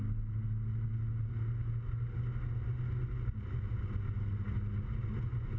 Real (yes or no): yes